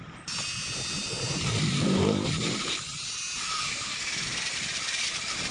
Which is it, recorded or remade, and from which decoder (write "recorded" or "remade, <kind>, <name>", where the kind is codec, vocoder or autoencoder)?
remade, vocoder, BigVGAN v2